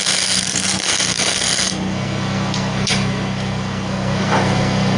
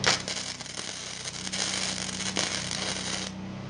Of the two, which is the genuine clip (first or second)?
second